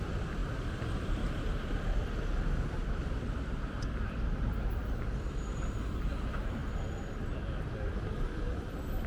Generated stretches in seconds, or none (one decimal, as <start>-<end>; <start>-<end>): 0.0-9.1